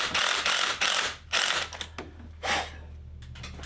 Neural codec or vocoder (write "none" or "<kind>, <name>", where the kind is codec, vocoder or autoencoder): none